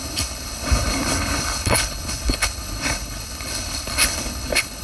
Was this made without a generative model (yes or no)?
no